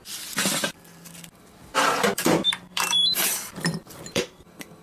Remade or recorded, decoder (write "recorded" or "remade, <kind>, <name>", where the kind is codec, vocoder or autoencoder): remade, vocoder, BigVGAN v2